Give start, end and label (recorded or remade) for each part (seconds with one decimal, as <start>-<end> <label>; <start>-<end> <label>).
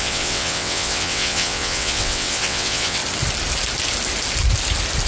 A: 0.0-3.0 remade; 3.0-5.1 recorded